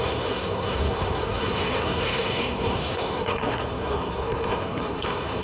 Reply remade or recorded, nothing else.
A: remade